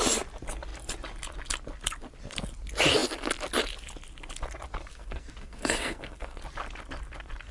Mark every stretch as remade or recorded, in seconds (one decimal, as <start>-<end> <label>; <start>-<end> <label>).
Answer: 0.0-4.9 recorded; 4.9-6.4 remade; 6.4-7.5 recorded